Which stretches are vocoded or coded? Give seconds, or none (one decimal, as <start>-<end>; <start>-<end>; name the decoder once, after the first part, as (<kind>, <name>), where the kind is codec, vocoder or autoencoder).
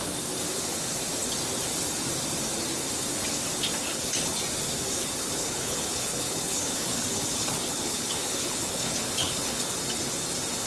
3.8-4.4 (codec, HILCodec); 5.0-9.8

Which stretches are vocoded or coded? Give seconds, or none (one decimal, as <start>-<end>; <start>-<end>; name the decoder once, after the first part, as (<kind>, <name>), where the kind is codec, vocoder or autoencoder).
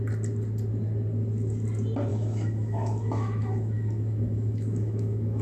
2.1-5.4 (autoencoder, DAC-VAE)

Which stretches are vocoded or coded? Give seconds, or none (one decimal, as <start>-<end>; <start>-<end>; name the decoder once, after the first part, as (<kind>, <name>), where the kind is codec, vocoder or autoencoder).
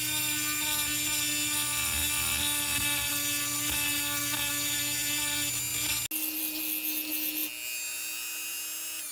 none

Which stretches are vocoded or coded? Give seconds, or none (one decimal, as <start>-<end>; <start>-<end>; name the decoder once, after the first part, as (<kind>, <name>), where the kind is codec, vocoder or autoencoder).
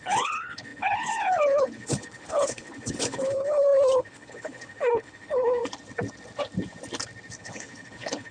0.0-5.6 (codec, HILCodec); 7.4-8.3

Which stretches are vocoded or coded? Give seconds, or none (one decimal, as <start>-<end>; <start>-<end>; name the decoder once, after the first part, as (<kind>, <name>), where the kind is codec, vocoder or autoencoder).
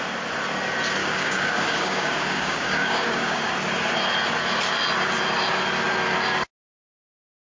1.0-3.5 (codec, DAC)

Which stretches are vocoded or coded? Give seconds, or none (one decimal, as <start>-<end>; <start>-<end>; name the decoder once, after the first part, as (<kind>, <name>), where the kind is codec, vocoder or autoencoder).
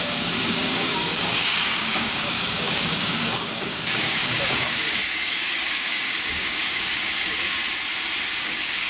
0.0-7.6 (codec, DAC); 8.4-8.9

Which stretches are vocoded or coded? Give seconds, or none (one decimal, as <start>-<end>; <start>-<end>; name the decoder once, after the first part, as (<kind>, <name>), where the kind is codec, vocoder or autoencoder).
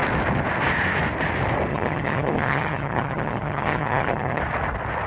1.7-4.4 (vocoder, HiFi-GAN)